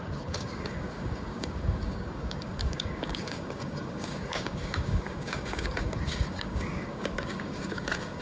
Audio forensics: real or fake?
fake